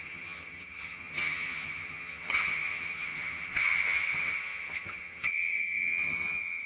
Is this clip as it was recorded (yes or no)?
no